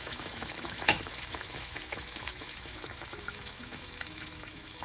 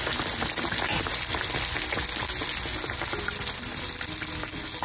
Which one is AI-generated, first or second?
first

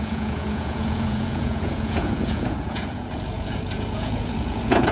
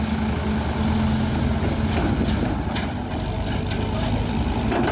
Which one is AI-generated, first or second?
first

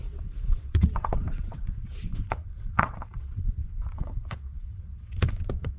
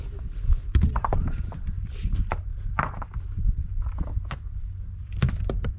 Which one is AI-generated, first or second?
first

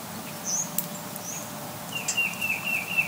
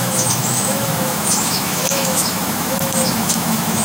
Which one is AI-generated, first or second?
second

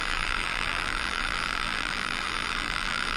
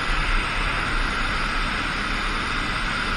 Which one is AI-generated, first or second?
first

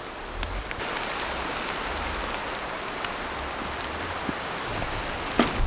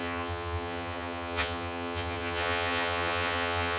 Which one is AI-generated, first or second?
second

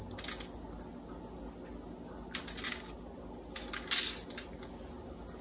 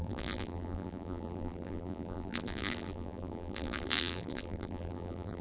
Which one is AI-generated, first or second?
second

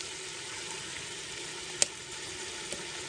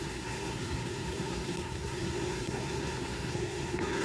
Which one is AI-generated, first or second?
second